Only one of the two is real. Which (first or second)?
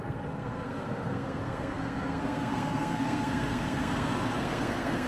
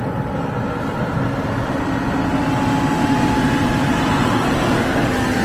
second